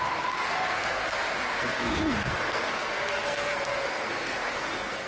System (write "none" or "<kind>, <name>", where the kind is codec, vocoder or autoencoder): codec, SNAC